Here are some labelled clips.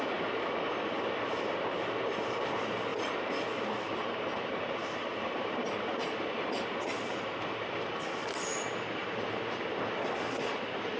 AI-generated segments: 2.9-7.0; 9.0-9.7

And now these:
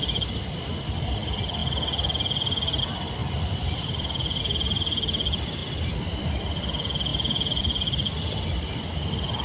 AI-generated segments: 3.2-4.4; 5.6-6.6; 7.1-7.6

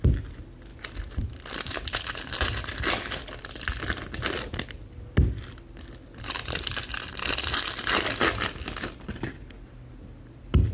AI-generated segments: none

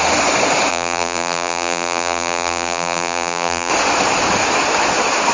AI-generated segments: 0.7-3.7